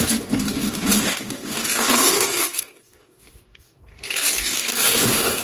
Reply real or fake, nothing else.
fake